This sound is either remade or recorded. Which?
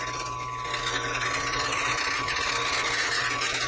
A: recorded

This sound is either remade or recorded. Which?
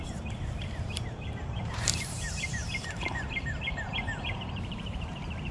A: remade